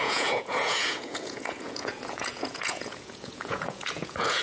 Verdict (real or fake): fake